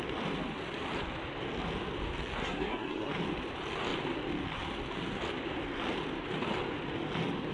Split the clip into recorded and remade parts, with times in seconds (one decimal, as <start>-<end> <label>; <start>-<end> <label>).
0.0-2.4 recorded; 2.4-3.1 remade; 3.1-7.5 recorded